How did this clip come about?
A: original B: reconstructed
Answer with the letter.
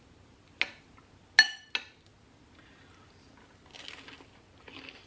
A